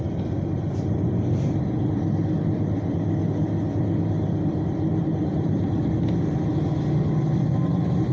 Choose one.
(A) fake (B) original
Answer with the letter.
B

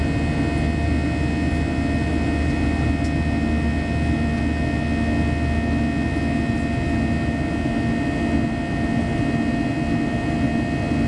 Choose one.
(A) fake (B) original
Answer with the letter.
B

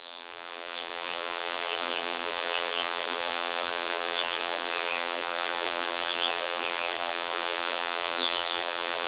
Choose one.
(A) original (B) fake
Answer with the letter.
B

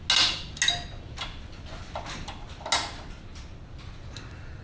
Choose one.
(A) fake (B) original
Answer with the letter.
B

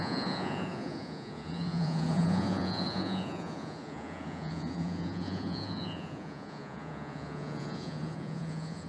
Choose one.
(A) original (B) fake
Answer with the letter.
B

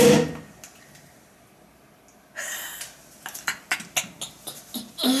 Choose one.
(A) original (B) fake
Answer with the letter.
A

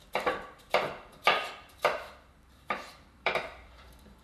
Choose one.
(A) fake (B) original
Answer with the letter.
A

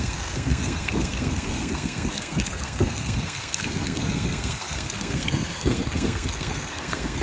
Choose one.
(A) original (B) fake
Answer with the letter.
B